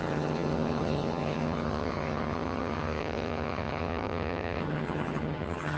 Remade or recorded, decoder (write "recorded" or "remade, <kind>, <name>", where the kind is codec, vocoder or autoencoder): remade, vocoder, HiFi-GAN